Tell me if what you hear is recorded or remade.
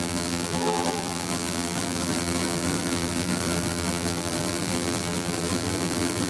remade